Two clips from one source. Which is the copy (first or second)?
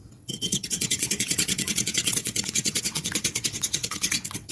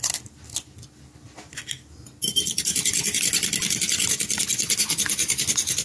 first